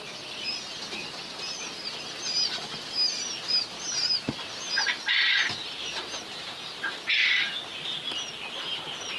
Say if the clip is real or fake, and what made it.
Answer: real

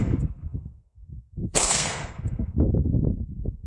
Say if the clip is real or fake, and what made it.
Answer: fake, codec, SNAC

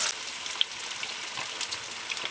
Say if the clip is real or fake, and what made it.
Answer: real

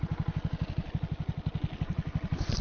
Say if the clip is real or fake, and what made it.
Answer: real